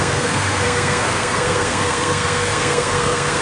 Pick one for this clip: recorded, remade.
remade